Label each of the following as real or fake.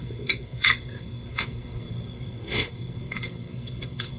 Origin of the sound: fake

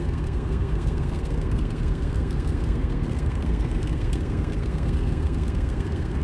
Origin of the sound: fake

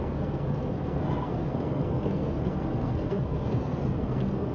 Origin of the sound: fake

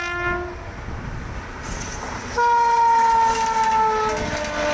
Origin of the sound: real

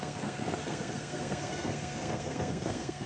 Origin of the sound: fake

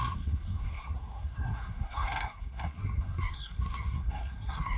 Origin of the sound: fake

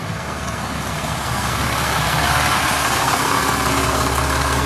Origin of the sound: fake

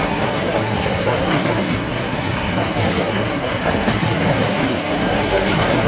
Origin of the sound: fake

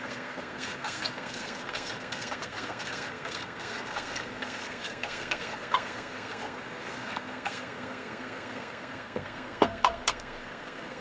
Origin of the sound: fake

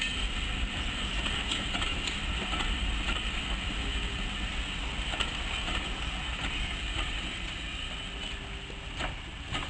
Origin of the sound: real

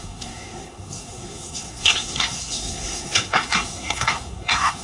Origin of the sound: fake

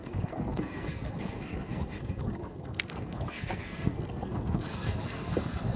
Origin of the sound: fake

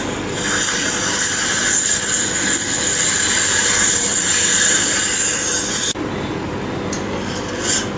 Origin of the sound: real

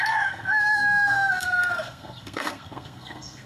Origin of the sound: fake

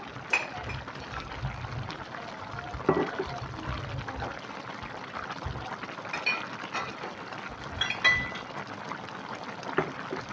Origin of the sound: real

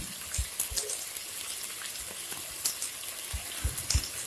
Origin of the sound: real